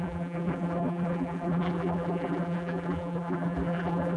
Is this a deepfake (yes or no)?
yes